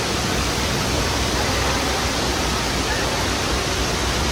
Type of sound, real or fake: fake